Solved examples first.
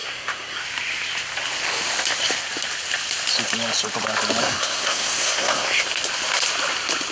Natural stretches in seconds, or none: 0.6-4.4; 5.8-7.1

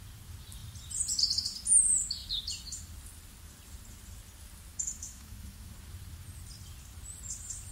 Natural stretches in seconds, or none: 0.0-4.7; 5.7-7.7

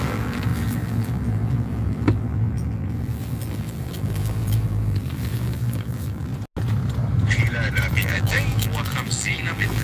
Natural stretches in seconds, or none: 6.3-7.9

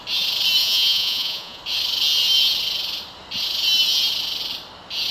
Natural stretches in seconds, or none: 0.0-0.6; 1.6-5.1

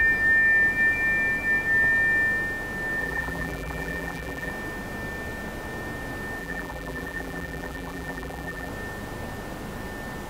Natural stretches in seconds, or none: 0.0-3.0; 4.5-6.4; 8.7-10.3

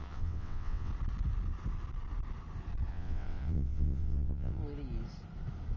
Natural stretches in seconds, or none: 0.9-2.9; 4.6-5.8

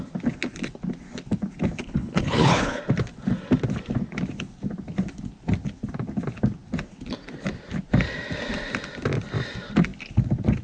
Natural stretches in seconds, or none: 0.0-1.8; 2.8-10.6

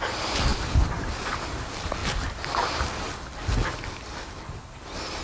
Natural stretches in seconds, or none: 0.0-5.2